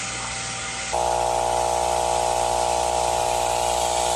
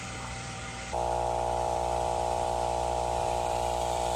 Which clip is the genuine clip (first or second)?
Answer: first